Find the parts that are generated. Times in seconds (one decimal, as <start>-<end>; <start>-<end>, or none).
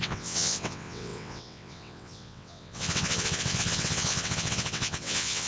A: 0.0-5.5